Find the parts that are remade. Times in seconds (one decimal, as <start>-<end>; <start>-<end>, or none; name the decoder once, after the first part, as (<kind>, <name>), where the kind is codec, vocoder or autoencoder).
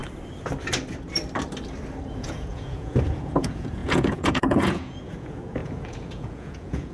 2.1-6.9 (vocoder, Vocos)